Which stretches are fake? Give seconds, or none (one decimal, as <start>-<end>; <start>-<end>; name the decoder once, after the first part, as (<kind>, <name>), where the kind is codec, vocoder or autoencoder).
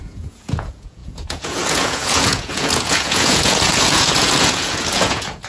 0.0-5.5 (vocoder, Vocos)